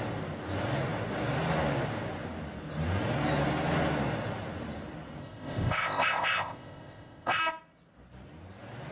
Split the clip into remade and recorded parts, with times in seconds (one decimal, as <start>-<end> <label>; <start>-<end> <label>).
0.0-5.2 recorded; 5.2-7.4 remade; 7.4-8.9 recorded